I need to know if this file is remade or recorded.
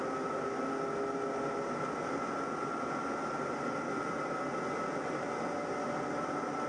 recorded